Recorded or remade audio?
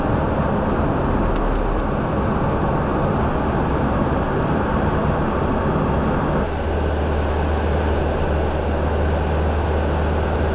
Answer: recorded